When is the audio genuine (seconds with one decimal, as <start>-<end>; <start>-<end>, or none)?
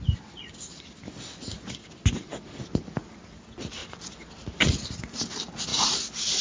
0.0-6.4